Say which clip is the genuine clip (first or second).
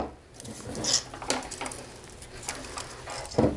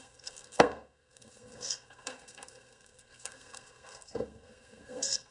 first